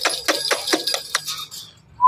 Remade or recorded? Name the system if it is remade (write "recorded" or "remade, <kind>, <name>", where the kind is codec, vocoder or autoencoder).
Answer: recorded